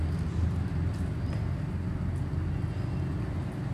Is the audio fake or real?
real